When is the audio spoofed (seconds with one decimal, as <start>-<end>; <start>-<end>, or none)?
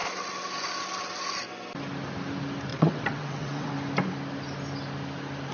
2.7-3.7